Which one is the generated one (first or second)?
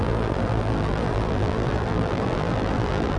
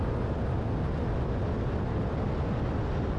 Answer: first